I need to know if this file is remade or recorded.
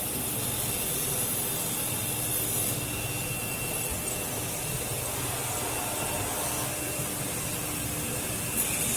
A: recorded